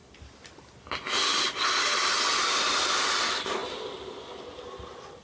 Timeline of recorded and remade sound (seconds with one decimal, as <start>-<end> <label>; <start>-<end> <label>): 0.0-3.1 recorded; 3.1-3.6 remade; 3.6-4.5 recorded; 4.5-5.2 remade